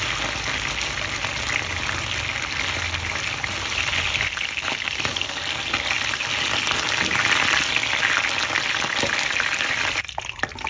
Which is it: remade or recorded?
recorded